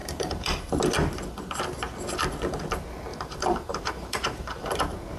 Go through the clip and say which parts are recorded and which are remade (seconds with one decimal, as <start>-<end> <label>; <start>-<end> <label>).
0.0-0.7 remade; 0.7-3.1 recorded; 3.1-4.8 remade; 4.8-5.2 recorded